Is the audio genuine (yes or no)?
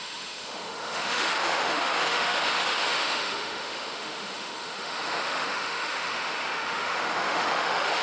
no